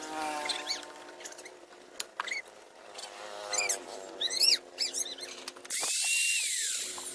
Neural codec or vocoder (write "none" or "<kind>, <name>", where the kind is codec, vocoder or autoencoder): none